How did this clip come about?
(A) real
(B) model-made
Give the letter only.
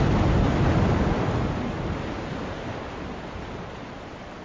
A